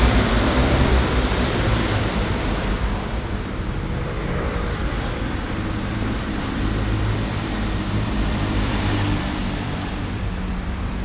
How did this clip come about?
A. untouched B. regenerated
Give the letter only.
B